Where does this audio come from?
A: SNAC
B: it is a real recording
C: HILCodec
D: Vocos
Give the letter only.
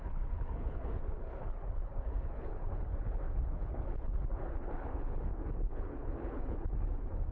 C